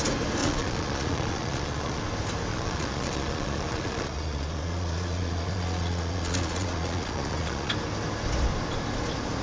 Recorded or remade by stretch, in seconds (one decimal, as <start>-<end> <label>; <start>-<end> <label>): 0.0-0.4 recorded; 0.4-2.0 remade; 2.0-2.5 recorded; 2.5-7.7 remade; 7.7-9.4 recorded